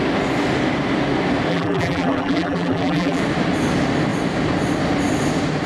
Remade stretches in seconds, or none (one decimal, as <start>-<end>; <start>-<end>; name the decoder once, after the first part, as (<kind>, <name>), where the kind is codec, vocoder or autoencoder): 1.5-3.2 (vocoder, BigVGAN v2)